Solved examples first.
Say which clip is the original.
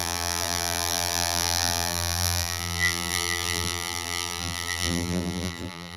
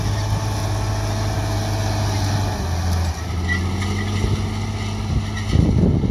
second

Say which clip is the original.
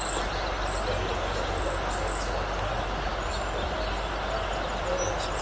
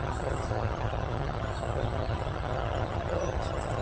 first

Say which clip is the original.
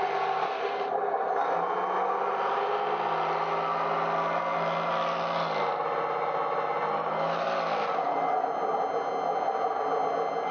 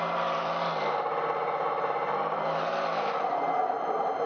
first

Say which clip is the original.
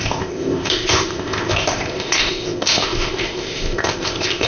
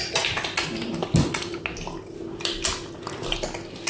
second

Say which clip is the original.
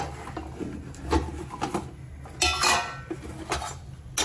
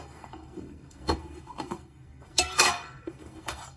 first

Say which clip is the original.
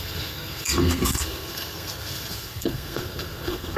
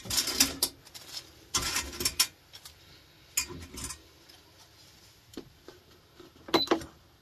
second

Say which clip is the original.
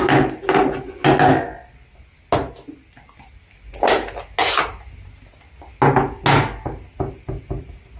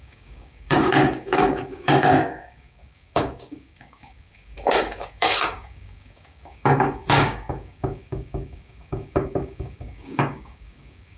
first